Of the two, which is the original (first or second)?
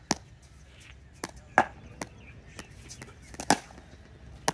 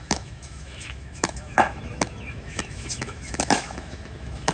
first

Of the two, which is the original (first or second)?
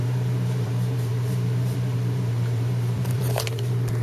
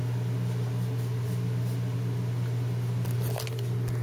second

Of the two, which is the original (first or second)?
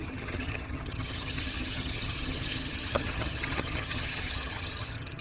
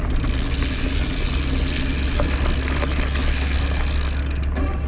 second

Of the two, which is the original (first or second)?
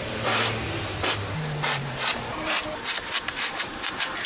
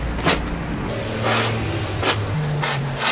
second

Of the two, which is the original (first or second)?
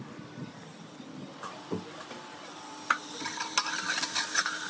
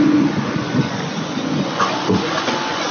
first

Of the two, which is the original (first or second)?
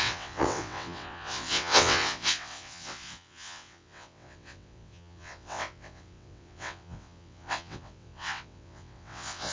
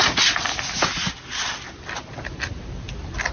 second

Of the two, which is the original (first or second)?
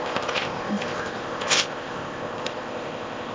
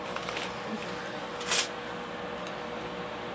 second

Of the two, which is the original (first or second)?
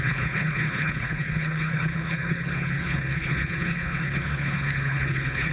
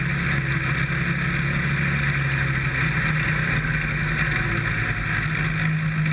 second